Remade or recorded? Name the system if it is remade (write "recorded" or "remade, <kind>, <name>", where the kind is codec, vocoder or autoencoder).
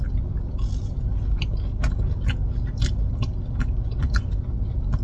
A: recorded